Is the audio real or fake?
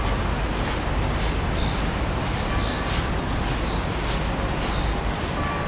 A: real